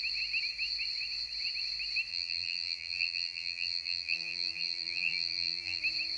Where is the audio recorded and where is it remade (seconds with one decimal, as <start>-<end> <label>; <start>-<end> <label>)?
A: 0.0-2.1 recorded; 2.1-5.8 remade; 5.8-6.2 recorded